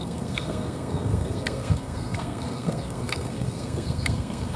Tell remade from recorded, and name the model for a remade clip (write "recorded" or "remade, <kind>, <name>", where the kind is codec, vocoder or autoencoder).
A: remade, codec, SNAC